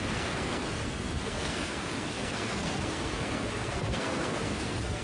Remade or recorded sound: remade